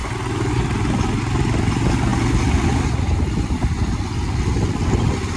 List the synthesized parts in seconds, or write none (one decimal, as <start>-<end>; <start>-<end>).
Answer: none